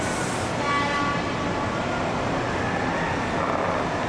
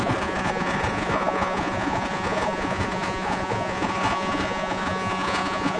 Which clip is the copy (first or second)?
second